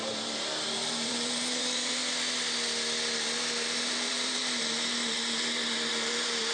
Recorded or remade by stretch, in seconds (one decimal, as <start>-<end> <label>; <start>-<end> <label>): 0.0-2.0 remade; 2.0-3.9 recorded; 3.9-4.4 remade; 4.4-5.9 recorded; 5.9-6.5 remade